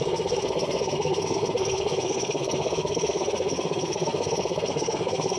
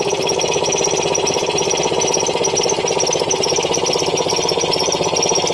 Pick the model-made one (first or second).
first